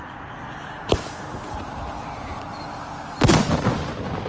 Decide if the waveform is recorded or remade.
recorded